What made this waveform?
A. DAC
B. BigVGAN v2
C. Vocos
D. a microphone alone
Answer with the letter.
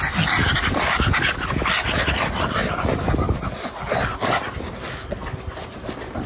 D